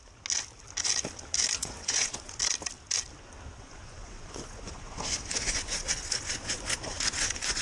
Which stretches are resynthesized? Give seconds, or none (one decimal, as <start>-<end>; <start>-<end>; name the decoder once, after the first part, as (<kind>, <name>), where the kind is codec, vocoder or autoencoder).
1.6-2.4 (vocoder, Vocos); 3.5-7.6

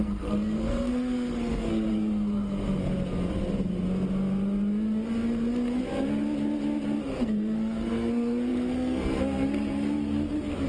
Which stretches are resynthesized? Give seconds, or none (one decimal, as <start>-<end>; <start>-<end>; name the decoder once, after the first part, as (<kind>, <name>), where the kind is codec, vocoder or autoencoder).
0.0-2.9 (codec, SNAC); 7.0-10.7

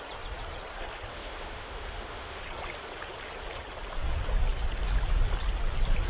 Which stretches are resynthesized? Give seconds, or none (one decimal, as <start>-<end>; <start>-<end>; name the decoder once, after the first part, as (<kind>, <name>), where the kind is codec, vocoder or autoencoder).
1.1-2.4 (autoencoder, DAC-VAE)

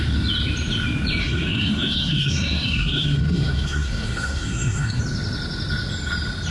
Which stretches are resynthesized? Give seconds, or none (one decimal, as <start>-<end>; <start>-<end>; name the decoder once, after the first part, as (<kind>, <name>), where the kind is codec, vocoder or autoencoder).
1.2-5.0 (codec, SNAC)

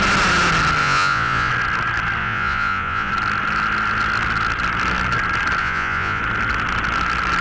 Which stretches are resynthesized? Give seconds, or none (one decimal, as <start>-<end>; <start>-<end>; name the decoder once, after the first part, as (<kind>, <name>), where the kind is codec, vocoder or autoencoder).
0.8-1.5 (vocoder, Vocos); 2.2-3.1; 5.6-6.2

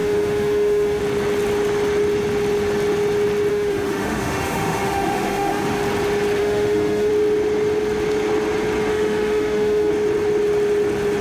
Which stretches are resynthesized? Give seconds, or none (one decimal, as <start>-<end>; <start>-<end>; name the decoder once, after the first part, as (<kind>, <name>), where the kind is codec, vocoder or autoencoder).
0.0-1.0 (autoencoder, DAC-VAE); 3.5-5.8; 6.4-7.1; 8.9-9.9